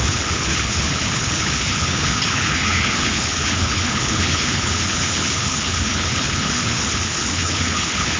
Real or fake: fake